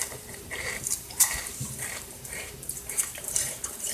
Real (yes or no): no